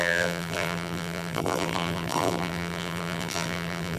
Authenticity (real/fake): fake